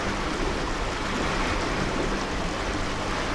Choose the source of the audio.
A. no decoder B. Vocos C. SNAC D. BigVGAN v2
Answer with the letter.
A